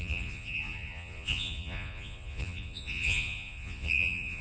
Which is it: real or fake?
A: fake